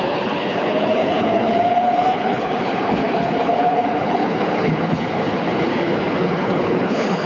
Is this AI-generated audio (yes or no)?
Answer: yes